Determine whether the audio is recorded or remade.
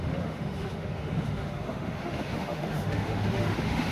remade